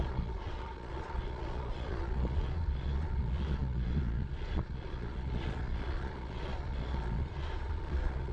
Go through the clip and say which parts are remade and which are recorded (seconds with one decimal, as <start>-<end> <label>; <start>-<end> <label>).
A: 0.0-8.3 remade